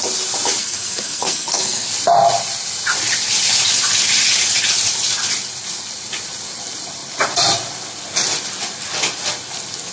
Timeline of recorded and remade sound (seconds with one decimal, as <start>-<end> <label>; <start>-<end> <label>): 0.0-0.6 recorded; 0.6-1.9 remade; 1.9-9.9 recorded